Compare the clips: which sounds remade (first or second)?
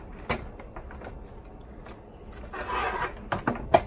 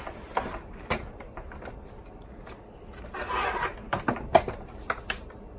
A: second